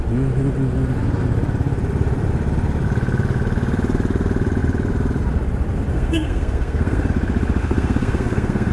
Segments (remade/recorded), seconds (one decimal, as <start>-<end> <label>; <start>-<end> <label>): 0.0-5.9 recorded; 5.9-7.1 remade; 7.1-7.6 recorded; 7.6-8.7 remade